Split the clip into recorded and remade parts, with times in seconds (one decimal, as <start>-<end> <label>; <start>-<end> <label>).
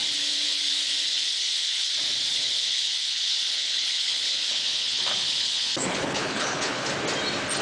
0.0-1.9 remade; 1.9-2.3 recorded; 2.3-6.9 remade; 6.9-7.6 recorded